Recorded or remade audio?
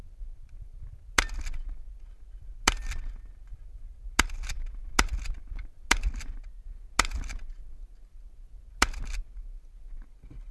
recorded